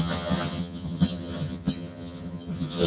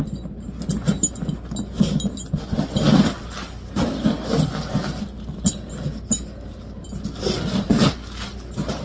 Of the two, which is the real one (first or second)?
second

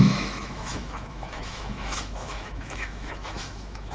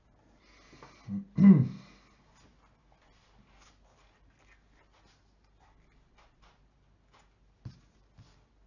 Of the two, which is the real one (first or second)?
second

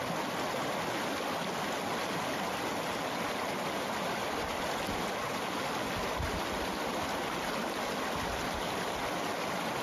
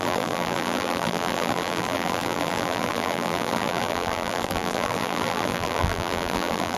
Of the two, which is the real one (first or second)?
first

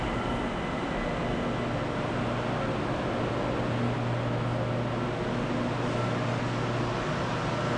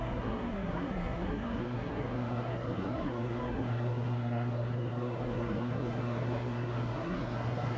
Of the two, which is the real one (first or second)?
first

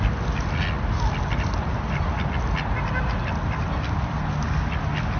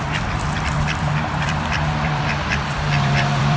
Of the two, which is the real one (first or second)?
first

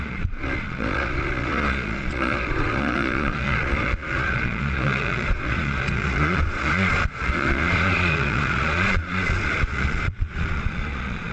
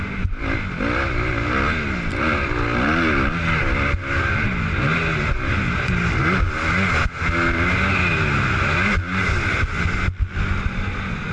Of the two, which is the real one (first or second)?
second